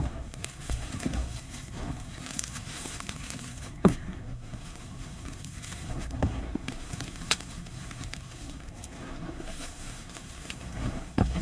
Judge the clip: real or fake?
fake